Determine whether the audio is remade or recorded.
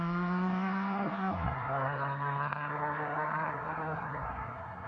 remade